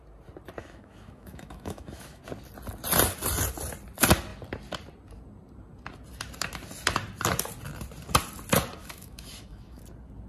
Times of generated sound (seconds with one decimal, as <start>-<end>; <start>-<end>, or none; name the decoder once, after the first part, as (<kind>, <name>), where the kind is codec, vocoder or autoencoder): 0.6-2.2 (autoencoder, DAC-VAE); 8.8-9.8